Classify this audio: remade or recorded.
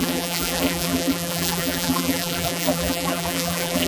remade